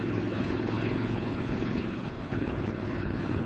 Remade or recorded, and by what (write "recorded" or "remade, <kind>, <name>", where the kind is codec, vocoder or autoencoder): remade, codec, HILCodec